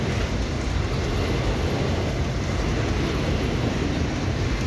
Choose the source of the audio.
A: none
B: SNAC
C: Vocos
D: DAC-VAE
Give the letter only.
A